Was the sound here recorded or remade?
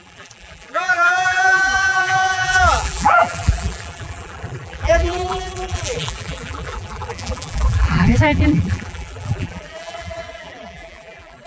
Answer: remade